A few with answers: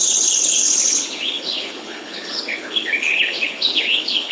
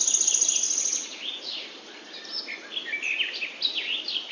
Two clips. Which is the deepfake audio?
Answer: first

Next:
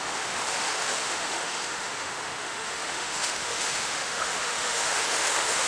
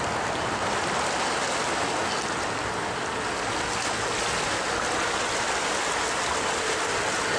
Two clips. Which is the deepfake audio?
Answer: first